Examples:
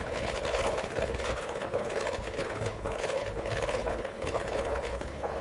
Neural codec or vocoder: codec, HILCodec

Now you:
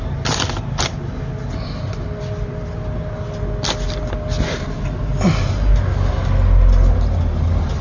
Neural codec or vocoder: none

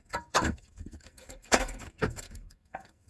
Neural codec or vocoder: codec, SNAC